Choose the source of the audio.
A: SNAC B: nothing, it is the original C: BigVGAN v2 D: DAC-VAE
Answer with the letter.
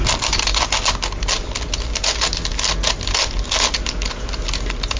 B